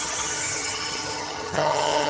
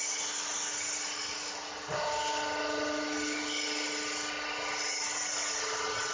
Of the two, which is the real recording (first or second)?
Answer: second